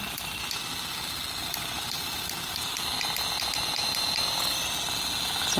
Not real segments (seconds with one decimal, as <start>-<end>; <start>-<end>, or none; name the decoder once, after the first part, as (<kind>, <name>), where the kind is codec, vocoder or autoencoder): 1.4-2.5 (vocoder, BigVGAN v2)